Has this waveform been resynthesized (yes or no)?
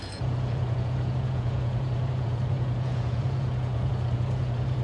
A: yes